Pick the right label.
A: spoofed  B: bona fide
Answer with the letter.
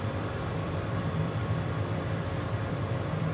A